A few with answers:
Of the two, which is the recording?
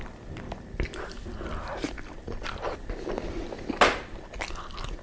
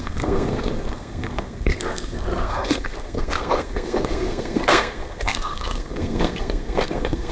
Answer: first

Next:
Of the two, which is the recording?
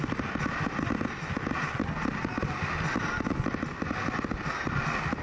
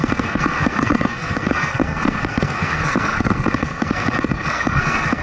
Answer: first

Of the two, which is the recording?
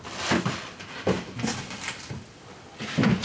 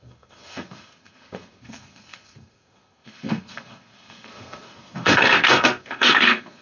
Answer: first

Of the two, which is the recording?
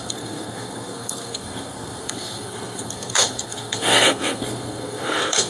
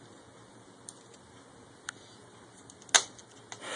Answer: second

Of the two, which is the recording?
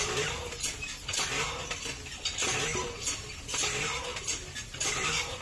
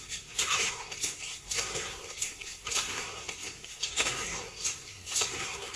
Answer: first